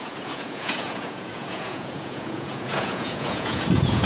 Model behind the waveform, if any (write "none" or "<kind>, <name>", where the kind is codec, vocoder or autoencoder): vocoder, Vocos